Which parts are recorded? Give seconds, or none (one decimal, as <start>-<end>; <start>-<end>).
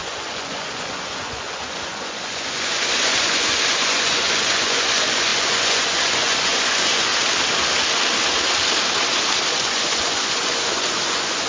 7.1-9.6